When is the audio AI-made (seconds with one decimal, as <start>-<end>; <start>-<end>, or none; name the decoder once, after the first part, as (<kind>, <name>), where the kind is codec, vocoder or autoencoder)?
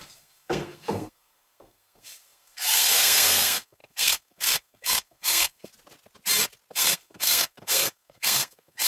0.0-5.7 (codec, SNAC); 6.7-8.9